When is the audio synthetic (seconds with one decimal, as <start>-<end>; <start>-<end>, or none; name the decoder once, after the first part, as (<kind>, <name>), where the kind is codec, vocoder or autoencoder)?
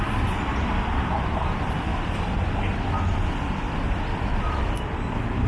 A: 0.0-5.5 (vocoder, BigVGAN v2)